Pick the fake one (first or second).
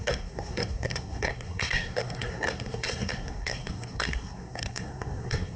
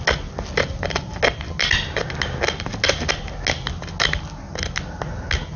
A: first